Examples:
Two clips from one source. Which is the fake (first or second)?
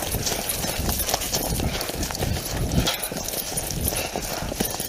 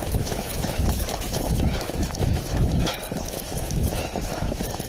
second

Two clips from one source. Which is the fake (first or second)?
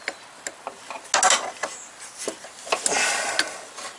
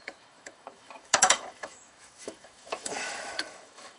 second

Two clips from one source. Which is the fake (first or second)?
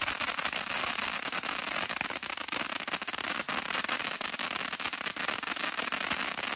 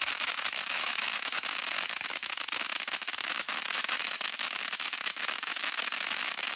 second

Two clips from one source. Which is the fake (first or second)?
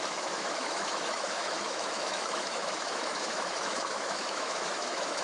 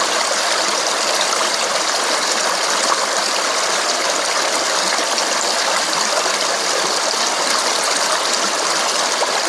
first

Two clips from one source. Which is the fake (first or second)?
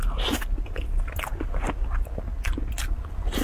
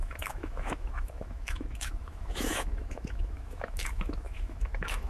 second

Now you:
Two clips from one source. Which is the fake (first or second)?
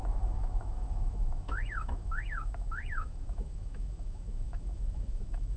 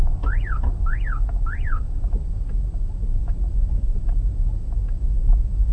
first